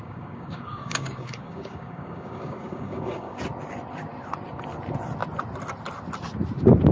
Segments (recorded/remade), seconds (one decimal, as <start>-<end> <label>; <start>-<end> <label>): 0.0-3.4 remade; 3.4-6.9 recorded